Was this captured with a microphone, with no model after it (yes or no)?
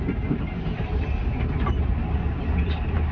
yes